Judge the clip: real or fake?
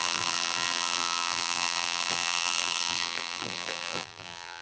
fake